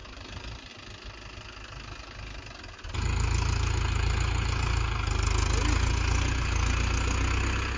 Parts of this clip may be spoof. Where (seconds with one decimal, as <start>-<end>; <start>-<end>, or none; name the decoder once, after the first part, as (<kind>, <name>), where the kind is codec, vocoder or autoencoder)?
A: 0.0-0.7 (vocoder, BigVGAN v2)